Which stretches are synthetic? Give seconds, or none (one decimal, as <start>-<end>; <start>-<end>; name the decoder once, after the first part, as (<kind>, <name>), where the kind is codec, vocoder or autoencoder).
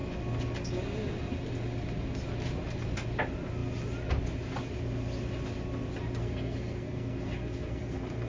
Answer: 6.2-8.3 (codec, SNAC)